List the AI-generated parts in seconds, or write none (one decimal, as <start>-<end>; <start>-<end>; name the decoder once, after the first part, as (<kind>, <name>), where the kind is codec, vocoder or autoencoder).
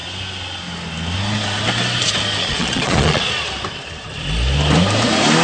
2.4-3.3 (vocoder, Vocos)